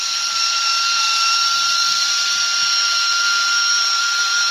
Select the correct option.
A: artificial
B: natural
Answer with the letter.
B